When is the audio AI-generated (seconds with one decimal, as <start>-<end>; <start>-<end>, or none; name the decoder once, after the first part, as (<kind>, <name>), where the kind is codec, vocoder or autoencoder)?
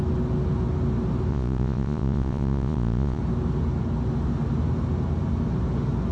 1.3-3.2 (vocoder, Vocos)